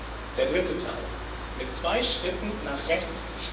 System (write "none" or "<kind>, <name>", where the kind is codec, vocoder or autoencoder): autoencoder, DAC-VAE